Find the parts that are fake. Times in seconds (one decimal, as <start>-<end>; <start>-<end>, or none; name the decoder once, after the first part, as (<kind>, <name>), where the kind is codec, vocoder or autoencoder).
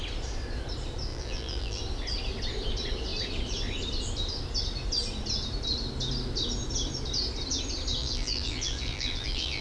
1.1-1.8 (vocoder, BigVGAN v2); 8.0-9.6